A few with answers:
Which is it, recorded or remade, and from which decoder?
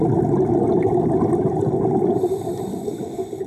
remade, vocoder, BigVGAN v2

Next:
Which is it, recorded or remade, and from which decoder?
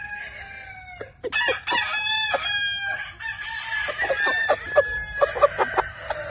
recorded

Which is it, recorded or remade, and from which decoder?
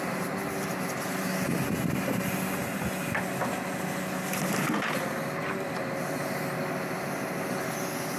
recorded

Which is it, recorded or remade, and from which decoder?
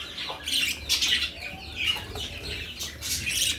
recorded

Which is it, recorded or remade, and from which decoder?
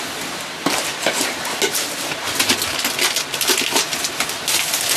recorded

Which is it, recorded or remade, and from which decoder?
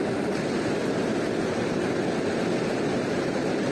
remade, vocoder, BigVGAN v2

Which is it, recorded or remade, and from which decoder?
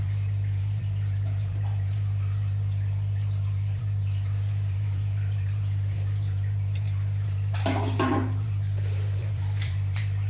remade, vocoder, BigVGAN v2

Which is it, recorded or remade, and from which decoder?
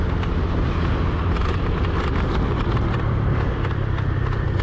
remade, vocoder, BigVGAN v2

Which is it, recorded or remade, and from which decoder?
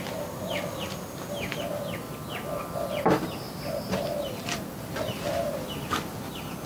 recorded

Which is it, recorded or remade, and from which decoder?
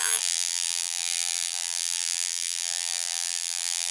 remade, vocoder, BigVGAN v2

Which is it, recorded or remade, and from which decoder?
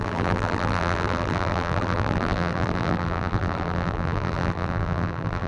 remade, vocoder, BigVGAN v2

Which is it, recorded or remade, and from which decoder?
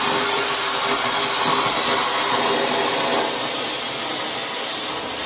recorded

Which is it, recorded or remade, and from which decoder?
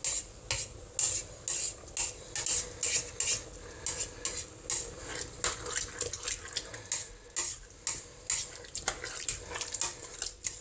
recorded